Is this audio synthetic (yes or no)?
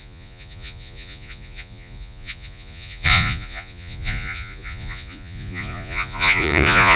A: yes